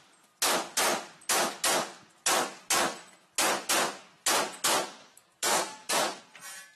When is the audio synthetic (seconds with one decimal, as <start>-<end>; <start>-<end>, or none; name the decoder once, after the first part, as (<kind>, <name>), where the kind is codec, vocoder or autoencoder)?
5.0-6.2 (codec, DAC)